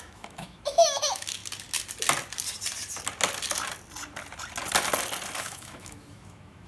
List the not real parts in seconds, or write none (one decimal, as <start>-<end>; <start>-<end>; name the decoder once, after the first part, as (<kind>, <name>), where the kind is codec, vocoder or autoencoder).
0.0-1.4 (autoencoder, DAC-VAE); 5.4-6.7